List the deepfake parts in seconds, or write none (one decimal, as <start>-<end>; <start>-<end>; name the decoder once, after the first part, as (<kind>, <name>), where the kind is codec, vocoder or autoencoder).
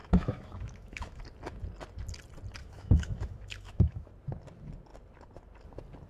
0.0-1.2 (autoencoder, DAC-VAE); 2.6-4.1